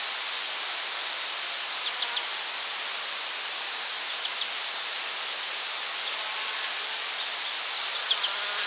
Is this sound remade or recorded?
recorded